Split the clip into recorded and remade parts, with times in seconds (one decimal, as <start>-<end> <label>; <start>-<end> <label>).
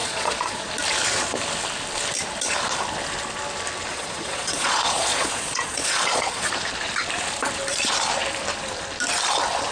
0.0-0.7 remade; 0.7-3.9 recorded; 3.9-6.5 remade; 6.5-9.7 recorded